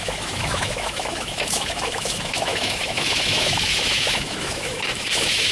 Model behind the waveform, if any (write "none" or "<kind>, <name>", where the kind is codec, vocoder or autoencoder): autoencoder, DAC-VAE